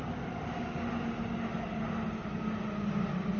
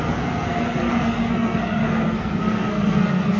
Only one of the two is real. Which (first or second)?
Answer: first